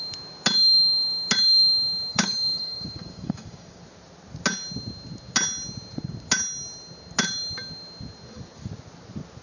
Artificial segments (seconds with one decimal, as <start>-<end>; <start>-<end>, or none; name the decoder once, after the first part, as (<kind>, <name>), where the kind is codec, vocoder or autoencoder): 2.1-3.8 (codec, DAC)